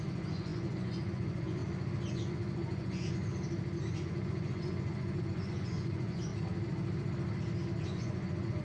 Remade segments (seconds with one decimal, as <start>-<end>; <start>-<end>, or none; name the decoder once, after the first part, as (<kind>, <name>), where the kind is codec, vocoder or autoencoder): 0.0-1.6 (vocoder, Vocos); 2.1-3.2; 3.9-6.3; 7.8-8.6